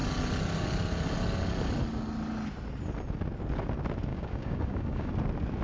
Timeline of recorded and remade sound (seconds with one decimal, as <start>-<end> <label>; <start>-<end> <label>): 0.0-4.1 recorded; 4.1-5.1 remade; 5.1-5.6 recorded